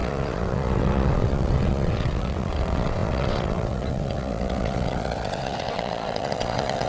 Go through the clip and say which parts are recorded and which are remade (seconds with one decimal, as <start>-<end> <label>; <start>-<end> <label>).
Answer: 0.0-6.9 remade